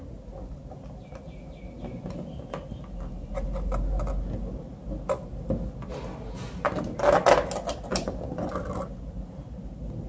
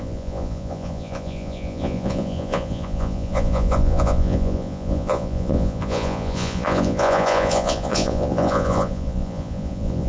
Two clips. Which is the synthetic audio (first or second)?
second